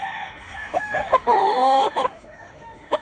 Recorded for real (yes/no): no